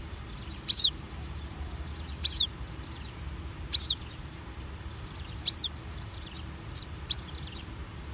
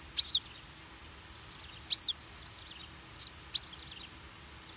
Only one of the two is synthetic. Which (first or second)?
first